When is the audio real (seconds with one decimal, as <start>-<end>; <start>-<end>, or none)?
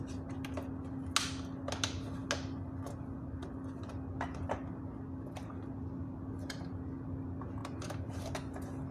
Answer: 0.0-8.9